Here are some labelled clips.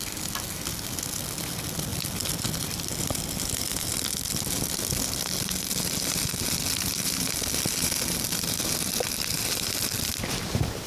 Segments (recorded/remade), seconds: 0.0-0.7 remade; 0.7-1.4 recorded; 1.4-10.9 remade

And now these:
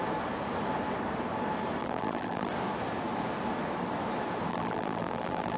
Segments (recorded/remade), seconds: 0.0-1.8 recorded; 1.8-2.5 remade; 2.5-4.5 recorded; 4.5-5.6 remade

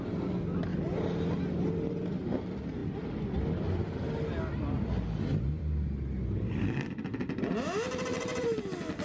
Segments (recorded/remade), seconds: 0.0-0.7 recorded; 0.7-2.4 remade; 2.4-8.1 recorded; 8.1-8.6 remade; 8.6-9.0 recorded